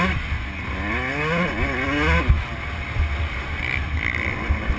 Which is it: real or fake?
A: real